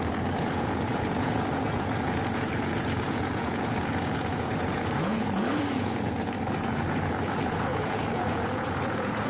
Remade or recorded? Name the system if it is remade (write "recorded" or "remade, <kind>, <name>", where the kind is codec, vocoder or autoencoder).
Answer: remade, vocoder, Vocos